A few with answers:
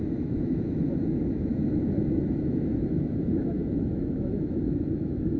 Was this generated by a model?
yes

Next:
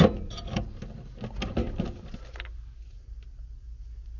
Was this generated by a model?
no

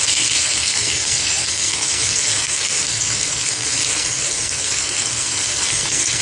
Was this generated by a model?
yes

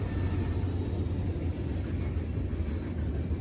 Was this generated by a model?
no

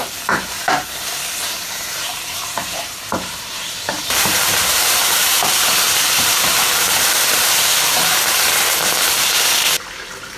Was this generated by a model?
yes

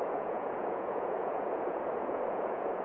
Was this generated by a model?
yes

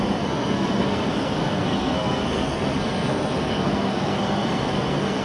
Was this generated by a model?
yes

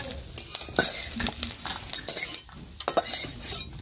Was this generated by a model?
no